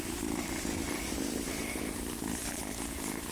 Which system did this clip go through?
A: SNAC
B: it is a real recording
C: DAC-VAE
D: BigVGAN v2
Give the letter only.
D